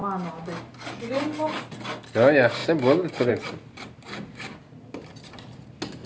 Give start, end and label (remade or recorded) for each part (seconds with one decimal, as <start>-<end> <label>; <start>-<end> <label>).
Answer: 0.0-6.1 recorded